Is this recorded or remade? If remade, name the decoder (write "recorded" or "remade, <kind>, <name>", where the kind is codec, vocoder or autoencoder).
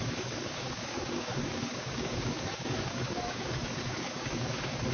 remade, codec, DAC